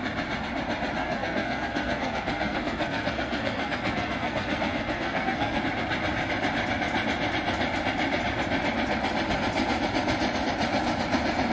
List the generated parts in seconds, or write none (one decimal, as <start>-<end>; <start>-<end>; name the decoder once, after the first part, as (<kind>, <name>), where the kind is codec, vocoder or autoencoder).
1.0-5.6 (codec, SNAC)